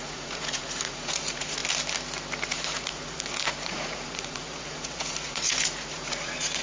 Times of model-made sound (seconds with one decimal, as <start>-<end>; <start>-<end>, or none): 0.0-1.6; 2.5-6.6